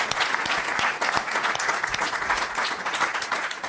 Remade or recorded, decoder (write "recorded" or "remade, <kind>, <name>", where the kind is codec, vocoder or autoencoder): remade, vocoder, Vocos